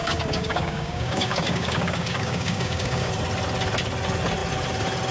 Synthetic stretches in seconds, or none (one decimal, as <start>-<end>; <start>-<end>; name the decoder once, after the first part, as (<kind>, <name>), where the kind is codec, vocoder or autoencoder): 0.0-3.1 (codec, DAC)